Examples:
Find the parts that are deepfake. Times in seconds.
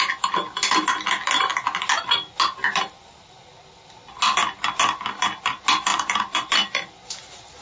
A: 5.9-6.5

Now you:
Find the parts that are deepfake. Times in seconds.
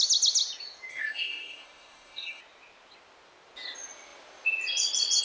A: 0.9-2.4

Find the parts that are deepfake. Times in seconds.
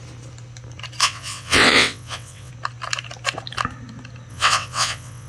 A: 1.0-2.5; 4.3-5.3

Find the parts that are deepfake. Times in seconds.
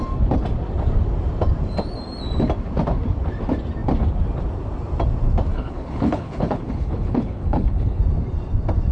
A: 5.5-8.0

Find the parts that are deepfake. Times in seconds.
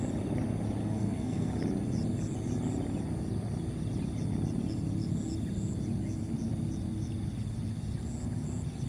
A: 0.8-1.5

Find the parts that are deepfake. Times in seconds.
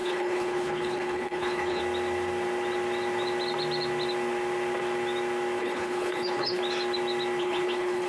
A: 0.0-1.8; 5.6-6.6; 7.4-8.1